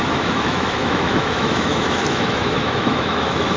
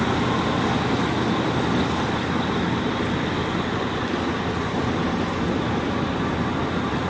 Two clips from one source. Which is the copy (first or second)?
first